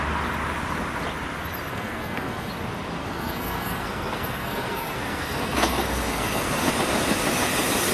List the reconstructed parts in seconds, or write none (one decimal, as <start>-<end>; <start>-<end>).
1.7-2.5; 3.0-6.7